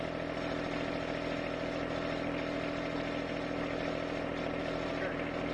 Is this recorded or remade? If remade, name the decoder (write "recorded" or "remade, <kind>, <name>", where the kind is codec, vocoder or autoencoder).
recorded